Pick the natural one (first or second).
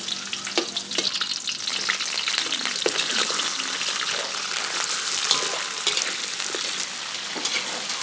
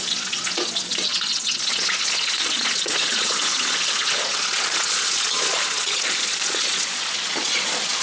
first